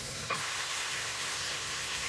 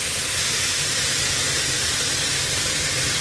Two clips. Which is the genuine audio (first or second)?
second